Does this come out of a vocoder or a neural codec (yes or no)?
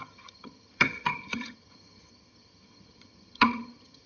yes